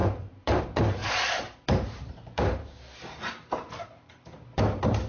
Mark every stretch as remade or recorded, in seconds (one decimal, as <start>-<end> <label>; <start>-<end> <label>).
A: 0.0-5.1 remade